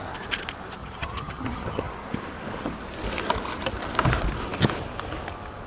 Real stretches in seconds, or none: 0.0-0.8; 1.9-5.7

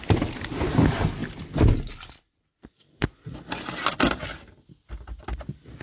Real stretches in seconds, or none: 0.0-5.8

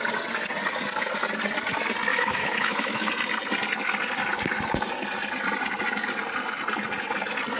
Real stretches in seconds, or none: 0.0-2.1; 3.1-7.6

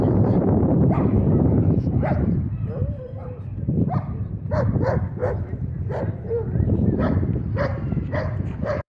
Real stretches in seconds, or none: none